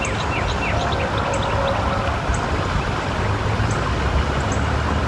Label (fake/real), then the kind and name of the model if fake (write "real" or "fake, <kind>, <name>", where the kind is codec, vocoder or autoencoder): real